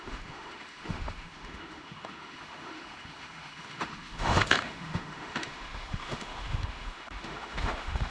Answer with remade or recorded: remade